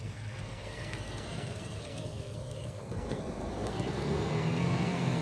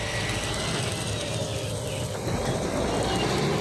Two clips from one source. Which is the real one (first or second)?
second